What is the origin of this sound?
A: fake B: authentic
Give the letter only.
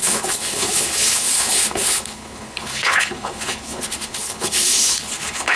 A